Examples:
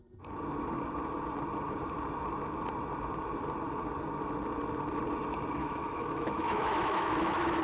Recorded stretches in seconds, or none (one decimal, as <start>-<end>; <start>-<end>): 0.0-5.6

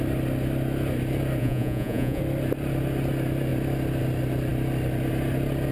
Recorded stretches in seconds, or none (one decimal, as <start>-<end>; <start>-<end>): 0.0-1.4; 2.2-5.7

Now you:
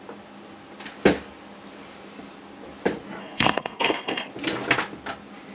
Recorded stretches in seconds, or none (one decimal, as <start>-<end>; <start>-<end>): 0.0-3.2; 4.3-5.5